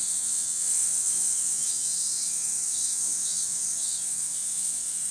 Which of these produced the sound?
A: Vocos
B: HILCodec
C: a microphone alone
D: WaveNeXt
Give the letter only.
D